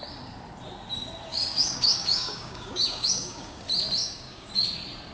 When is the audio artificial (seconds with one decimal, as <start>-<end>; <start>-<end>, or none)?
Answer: 1.3-3.6; 4.0-4.5